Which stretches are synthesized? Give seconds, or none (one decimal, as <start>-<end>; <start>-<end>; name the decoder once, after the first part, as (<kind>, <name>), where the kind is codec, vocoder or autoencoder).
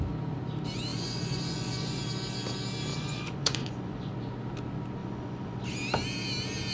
0.9-2.0 (vocoder, Vocos); 2.9-4.1; 5.0-5.6